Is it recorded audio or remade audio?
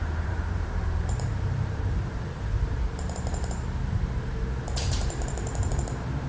remade